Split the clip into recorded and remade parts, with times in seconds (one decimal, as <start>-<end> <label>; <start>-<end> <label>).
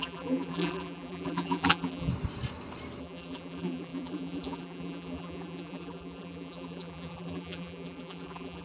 0.0-2.1 remade; 2.1-3.0 recorded; 3.0-8.6 remade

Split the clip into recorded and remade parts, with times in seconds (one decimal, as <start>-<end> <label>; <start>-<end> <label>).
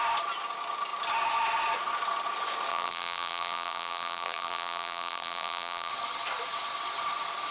0.0-2.7 recorded; 2.7-5.9 remade; 5.9-7.5 recorded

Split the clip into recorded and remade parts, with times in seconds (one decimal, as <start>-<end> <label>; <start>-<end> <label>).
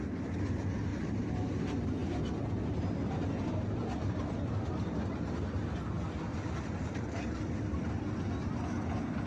0.0-0.9 recorded; 0.9-1.6 remade; 1.6-6.3 recorded; 6.3-8.3 remade; 8.3-9.3 recorded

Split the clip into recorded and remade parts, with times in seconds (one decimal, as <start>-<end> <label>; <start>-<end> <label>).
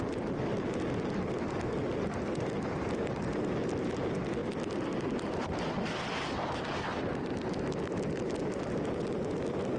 0.0-9.8 recorded